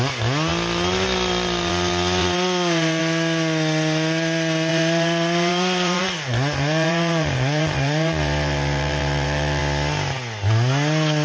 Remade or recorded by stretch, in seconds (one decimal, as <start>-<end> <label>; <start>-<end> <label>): 0.0-2.2 recorded; 2.2-3.0 remade; 3.0-4.7 recorded; 4.7-9.6 remade; 9.6-11.2 recorded